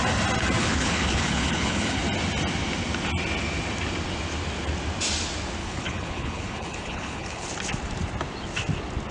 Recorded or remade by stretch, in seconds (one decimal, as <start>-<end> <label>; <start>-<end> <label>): 0.0-0.6 recorded; 0.6-2.0 remade; 2.0-5.6 recorded; 5.6-7.5 remade; 7.5-9.1 recorded